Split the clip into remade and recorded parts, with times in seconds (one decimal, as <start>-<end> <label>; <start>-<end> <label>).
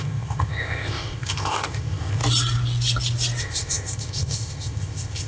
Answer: 0.0-2.2 remade; 2.2-3.4 recorded; 3.4-5.3 remade